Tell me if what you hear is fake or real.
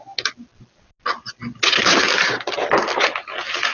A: real